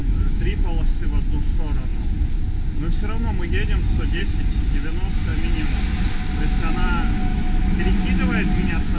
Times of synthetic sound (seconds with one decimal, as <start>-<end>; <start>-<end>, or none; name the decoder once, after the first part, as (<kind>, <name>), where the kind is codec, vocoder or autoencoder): 0.0-0.6 (autoencoder, DAC-VAE); 7.3-7.8

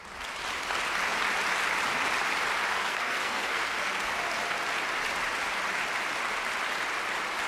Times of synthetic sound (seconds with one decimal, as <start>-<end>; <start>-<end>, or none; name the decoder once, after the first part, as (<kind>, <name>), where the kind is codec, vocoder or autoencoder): 2.7-4.1 (codec, SNAC)

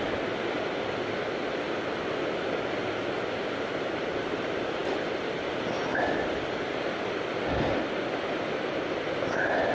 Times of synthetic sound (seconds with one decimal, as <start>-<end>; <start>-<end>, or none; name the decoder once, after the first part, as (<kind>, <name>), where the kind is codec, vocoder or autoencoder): none